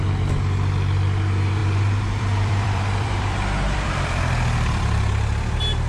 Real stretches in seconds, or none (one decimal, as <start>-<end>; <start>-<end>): 0.0-1.6; 5.1-5.9